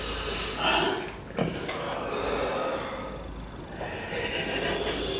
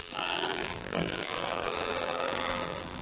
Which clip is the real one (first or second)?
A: first